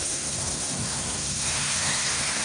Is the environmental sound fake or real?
fake